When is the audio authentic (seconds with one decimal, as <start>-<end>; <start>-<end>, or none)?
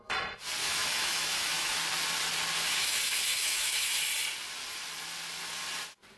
0.0-0.6; 1.8-2.7; 4.0-6.2